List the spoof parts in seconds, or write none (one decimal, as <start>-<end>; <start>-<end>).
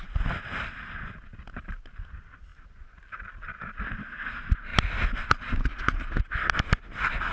none